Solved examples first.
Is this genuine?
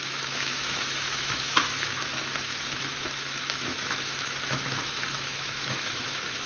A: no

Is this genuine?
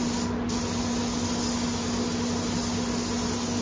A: yes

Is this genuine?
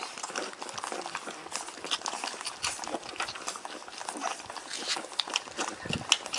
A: yes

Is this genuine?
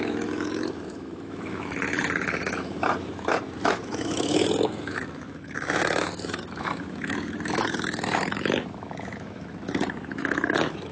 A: no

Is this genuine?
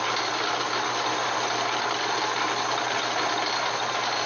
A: yes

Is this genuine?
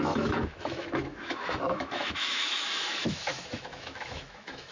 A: no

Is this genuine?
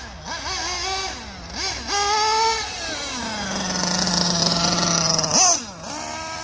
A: yes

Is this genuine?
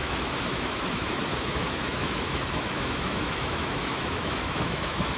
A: no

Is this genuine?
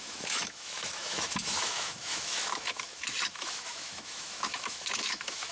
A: no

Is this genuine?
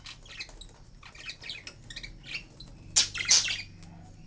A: yes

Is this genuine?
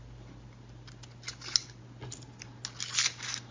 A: yes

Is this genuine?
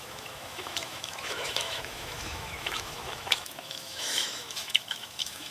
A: no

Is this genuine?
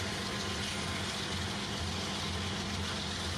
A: yes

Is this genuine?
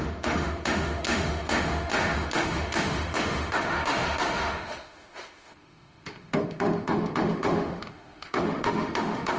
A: no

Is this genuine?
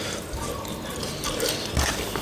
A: yes